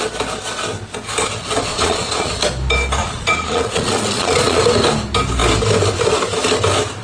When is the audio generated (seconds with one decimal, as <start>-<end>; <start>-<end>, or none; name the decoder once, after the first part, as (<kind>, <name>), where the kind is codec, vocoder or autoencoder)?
1.7-2.4 (vocoder, Vocos); 3.0-4.6